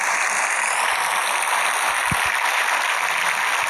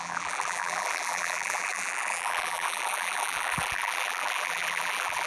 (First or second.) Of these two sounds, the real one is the first